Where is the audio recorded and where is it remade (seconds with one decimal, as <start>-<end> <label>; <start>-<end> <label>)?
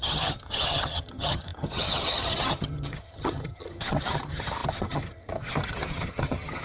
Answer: 0.0-6.6 remade